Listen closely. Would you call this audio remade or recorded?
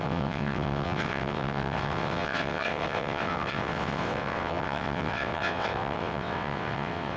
remade